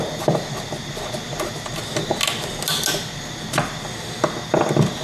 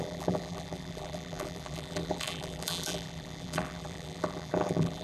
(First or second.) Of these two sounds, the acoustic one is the first